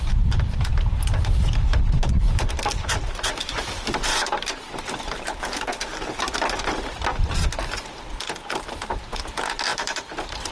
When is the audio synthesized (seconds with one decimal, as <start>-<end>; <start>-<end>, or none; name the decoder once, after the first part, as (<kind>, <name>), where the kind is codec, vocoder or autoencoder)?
0.0-5.7 (vocoder, BigVGAN v2); 9.0-10.5